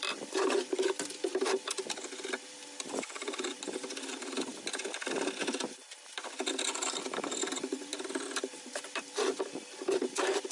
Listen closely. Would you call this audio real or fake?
fake